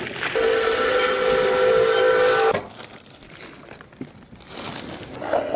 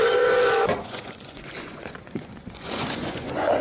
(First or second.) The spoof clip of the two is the second